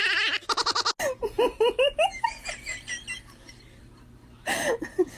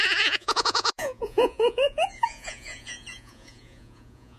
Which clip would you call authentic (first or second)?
first